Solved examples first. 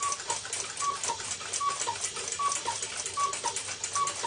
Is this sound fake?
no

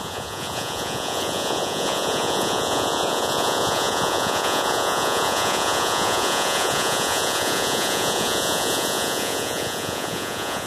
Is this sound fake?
yes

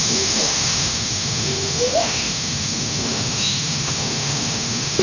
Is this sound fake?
yes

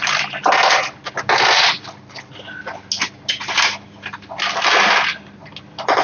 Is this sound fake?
no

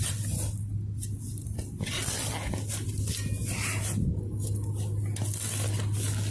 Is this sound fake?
no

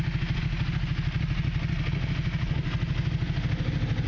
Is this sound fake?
no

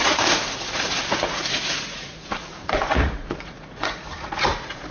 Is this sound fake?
yes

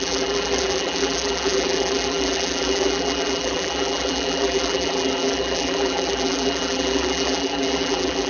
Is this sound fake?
yes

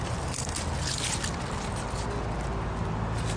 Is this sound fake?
no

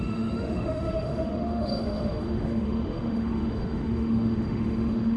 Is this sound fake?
yes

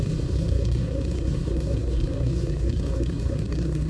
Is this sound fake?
yes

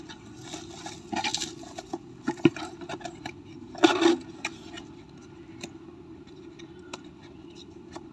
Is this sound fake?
no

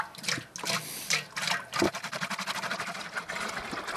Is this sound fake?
no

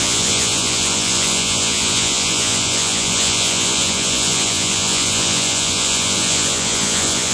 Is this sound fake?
yes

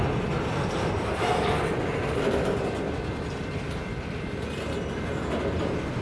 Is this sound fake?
no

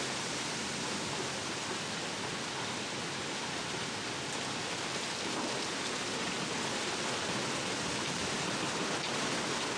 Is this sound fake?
no